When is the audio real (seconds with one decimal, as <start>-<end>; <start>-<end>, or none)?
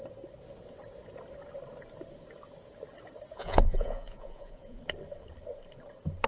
0.0-3.3; 4.8-6.3